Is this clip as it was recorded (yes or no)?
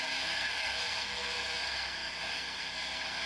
no